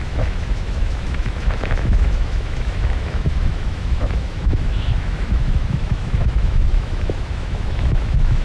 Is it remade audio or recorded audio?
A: remade